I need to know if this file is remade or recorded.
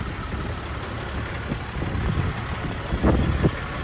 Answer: recorded